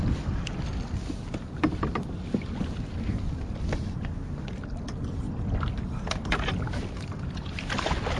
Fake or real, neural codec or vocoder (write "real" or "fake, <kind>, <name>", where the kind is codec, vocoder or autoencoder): real